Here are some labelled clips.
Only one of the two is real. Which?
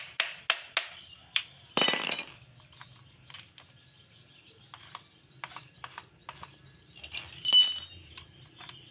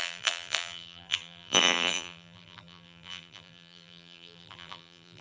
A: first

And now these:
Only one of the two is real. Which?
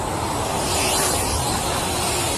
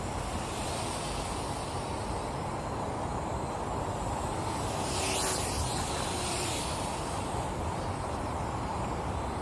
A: second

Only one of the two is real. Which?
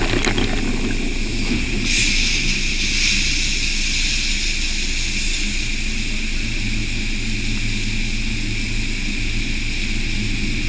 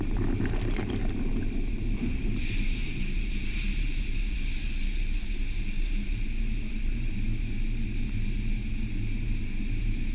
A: first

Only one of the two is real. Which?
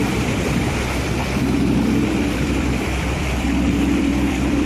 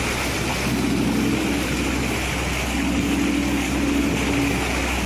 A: second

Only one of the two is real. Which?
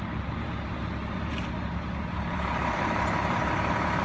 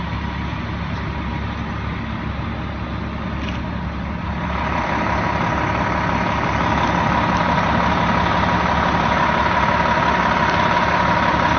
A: second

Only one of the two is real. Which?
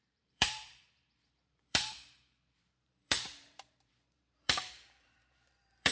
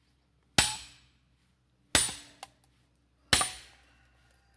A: second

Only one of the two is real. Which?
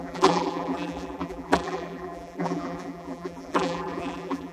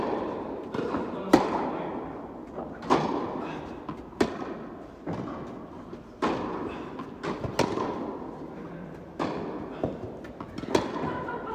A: second